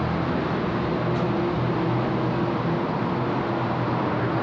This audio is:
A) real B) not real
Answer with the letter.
A